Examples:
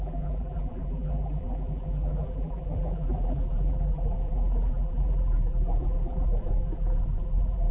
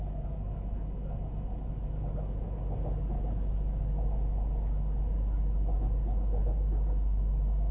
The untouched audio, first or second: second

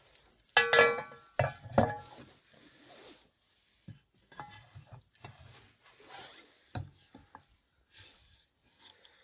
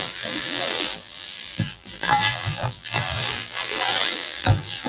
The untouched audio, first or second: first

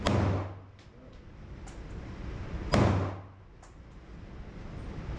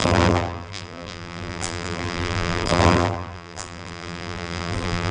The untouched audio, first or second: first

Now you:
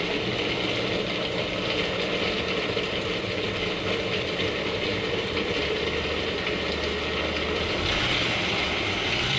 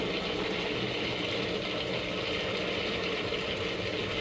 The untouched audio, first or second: second